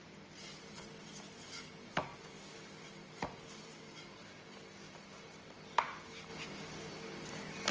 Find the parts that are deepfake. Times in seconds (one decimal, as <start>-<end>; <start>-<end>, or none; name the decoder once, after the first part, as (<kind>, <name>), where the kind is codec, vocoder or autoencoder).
none